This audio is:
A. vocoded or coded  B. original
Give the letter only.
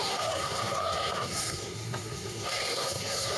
A